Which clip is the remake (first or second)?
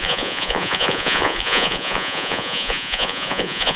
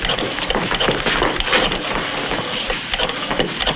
first